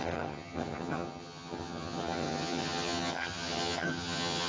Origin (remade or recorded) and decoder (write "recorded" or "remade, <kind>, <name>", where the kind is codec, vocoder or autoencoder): remade, vocoder, HiFi-GAN